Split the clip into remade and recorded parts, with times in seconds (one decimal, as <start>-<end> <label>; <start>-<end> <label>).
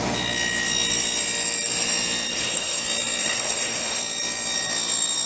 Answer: 0.0-2.3 recorded; 2.3-2.8 remade; 2.8-3.2 recorded; 3.2-4.0 remade; 4.0-5.3 recorded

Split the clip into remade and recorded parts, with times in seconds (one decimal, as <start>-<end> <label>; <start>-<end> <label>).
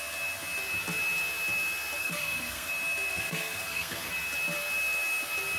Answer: 0.0-2.0 recorded; 2.0-2.7 remade; 2.7-3.1 recorded; 3.1-4.1 remade; 4.1-5.6 recorded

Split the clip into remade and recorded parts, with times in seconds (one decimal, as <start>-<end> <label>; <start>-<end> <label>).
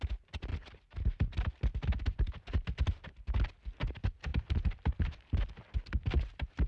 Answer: 0.0-0.5 recorded; 0.5-1.5 remade; 1.5-4.3 recorded; 4.3-5.2 remade; 5.2-6.0 recorded; 6.0-6.7 remade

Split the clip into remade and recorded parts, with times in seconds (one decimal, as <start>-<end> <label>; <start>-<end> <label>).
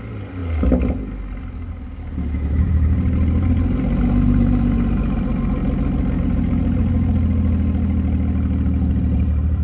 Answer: 0.0-0.4 remade; 0.4-1.4 recorded; 1.4-5.6 remade; 5.6-6.2 recorded; 6.2-6.9 remade; 6.9-8.9 recorded; 8.9-9.6 remade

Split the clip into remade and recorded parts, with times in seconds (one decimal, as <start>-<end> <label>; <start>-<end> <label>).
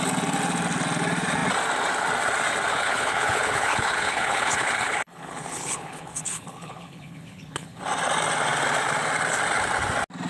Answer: 0.0-2.7 recorded; 2.7-7.8 remade; 7.8-10.3 recorded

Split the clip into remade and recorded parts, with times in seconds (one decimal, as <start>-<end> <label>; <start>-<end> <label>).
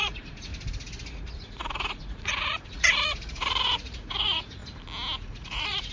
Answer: 0.0-0.5 remade; 0.5-1.1 recorded; 1.1-4.6 remade; 4.6-5.2 recorded; 5.2-5.9 remade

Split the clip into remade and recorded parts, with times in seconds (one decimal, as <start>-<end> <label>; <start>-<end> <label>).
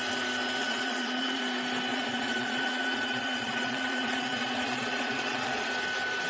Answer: 0.0-0.6 recorded; 0.6-1.4 remade; 1.4-1.9 recorded; 1.9-5.7 remade; 5.7-6.3 recorded